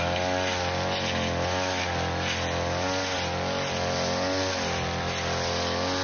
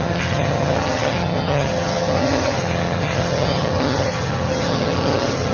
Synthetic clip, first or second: second